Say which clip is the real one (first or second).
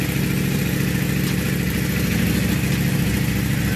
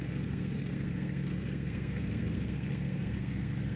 first